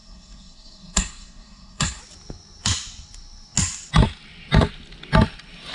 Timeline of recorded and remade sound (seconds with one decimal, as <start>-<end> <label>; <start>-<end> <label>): 0.0-2.0 remade; 2.0-5.7 recorded